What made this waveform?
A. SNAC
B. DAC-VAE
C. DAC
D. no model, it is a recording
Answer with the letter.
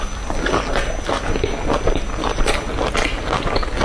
D